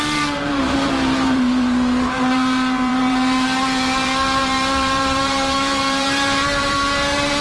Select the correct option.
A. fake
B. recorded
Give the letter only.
A